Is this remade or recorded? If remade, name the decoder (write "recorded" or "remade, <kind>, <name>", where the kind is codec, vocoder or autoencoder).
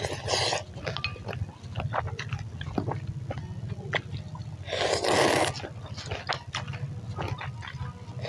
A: recorded